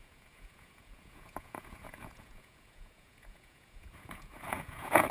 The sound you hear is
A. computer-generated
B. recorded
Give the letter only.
A